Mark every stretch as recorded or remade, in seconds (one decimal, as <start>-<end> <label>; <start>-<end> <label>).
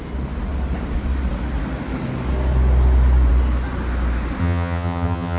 0.0-4.4 recorded; 4.4-5.4 remade